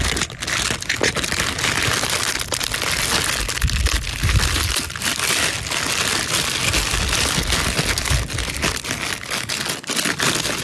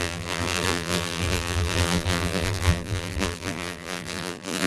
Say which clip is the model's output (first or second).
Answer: second